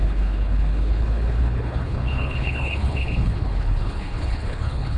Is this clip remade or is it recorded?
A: remade